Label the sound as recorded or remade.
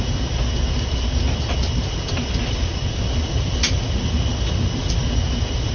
recorded